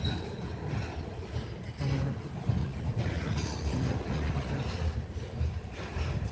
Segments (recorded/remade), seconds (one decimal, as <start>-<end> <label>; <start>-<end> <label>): 0.0-2.6 recorded; 2.6-4.5 remade; 4.5-6.3 recorded